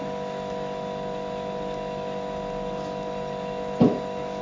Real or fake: real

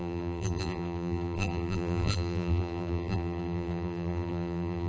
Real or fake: fake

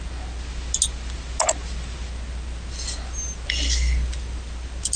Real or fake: real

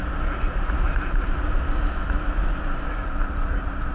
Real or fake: real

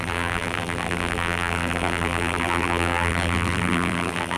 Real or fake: fake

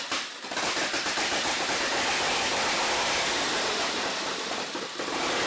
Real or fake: fake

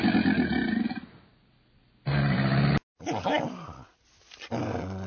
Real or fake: real